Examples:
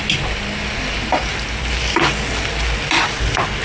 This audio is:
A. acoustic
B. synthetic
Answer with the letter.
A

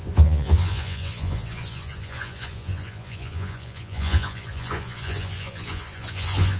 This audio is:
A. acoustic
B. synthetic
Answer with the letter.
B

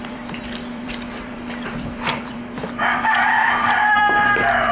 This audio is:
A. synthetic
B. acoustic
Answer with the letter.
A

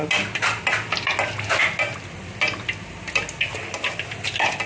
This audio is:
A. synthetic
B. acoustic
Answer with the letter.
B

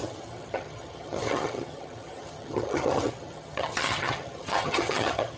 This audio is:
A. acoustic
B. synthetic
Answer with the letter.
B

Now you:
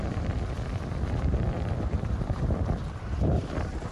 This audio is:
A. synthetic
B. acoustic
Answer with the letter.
A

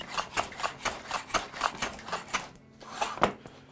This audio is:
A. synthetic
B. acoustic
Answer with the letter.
B